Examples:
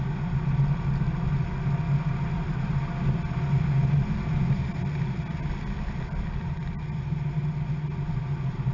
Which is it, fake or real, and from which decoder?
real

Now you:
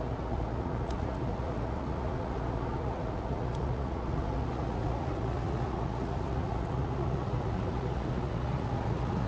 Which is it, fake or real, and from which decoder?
fake, vocoder, Vocos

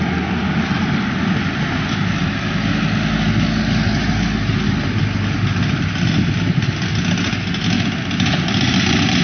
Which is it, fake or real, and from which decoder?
real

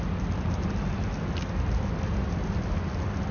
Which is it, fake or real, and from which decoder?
real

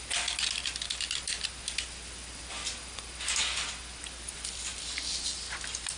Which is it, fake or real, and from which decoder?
real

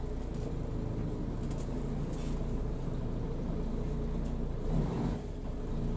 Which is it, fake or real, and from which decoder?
real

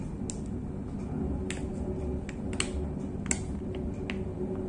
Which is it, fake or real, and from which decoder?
real